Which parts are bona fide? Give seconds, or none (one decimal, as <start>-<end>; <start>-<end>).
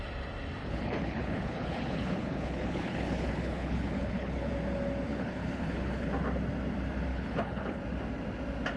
0.0-0.6; 4.5-5.1; 6.1-7.1; 7.8-8.8